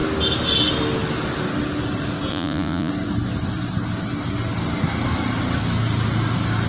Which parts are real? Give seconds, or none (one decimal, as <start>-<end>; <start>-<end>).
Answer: 0.0-2.3; 2.9-6.7